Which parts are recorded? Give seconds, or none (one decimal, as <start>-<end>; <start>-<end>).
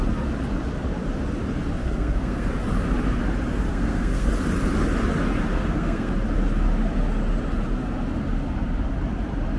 0.0-1.8; 2.5-3.7; 4.3-5.5; 6.1-9.6